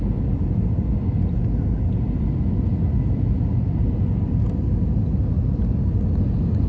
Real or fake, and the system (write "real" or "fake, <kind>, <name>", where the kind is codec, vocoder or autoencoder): real